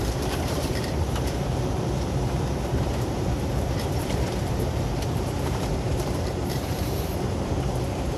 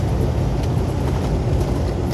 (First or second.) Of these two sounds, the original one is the second